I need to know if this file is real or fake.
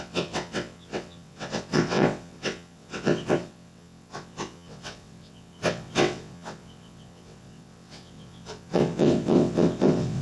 fake